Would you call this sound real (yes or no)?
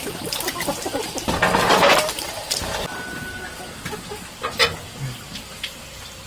yes